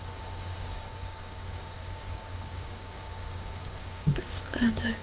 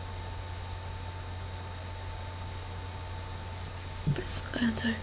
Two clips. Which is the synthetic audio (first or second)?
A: first